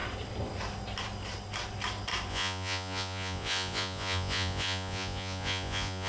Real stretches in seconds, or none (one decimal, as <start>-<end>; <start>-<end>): 0.0-2.3